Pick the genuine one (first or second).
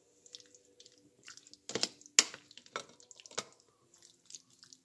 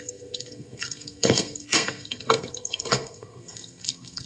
first